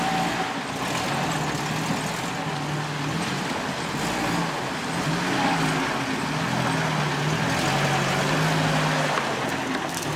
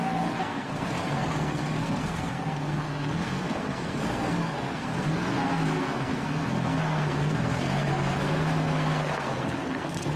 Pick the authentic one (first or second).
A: first